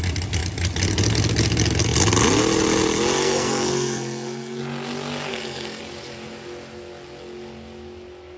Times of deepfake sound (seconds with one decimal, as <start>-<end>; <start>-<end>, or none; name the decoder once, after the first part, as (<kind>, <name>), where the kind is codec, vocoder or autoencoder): 3.2-4.6 (codec, SNAC); 5.3-5.8

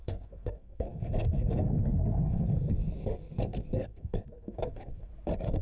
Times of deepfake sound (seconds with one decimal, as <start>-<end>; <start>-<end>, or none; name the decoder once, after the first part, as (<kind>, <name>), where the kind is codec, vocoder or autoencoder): 0.0-5.1 (codec, SNAC)

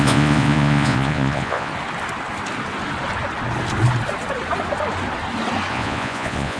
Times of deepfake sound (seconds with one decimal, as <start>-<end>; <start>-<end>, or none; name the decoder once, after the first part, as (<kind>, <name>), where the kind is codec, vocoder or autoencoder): 0.0-1.7 (vocoder, Vocos); 5.7-6.6

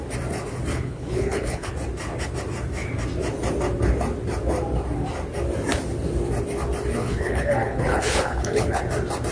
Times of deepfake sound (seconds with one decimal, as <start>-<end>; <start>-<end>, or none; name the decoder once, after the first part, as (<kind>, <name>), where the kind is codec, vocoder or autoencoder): 0.7-1.7 (codec, HILCodec); 7.0-8.8